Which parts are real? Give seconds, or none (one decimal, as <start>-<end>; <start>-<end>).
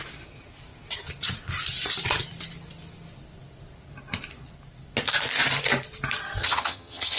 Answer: 0.0-6.4